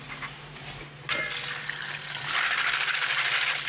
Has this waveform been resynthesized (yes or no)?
no